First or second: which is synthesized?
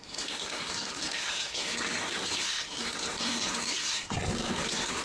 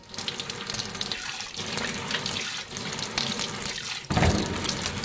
first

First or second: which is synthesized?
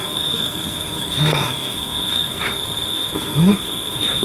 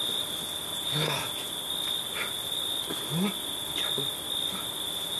first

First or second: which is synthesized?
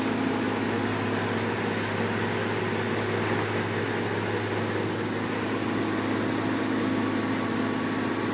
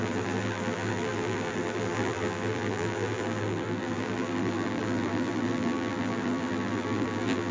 second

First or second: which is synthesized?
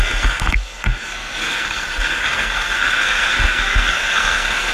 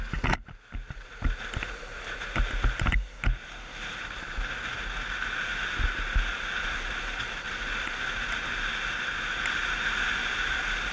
first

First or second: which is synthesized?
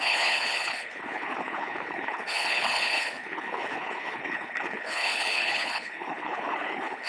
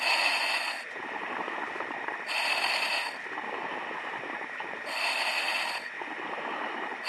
first